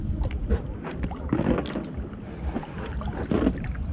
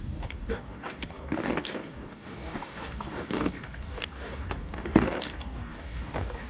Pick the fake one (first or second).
second